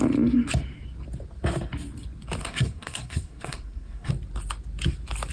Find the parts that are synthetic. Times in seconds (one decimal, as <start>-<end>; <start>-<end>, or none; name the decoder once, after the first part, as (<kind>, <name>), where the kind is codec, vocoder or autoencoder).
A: 2.4-4.1 (codec, SNAC)